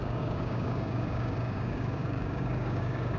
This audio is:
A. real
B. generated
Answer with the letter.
B